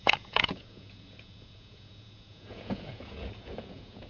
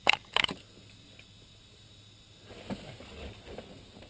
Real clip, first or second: second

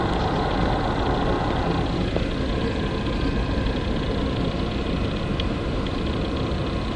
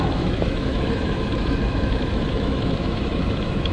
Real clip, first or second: first